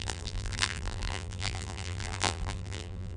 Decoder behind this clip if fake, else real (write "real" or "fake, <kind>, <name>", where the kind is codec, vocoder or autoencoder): fake, vocoder, BigVGAN v2